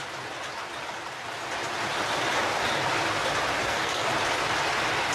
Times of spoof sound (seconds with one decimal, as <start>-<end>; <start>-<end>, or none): 3.6-4.1